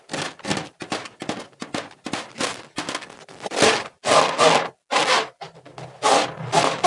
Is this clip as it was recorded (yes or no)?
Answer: yes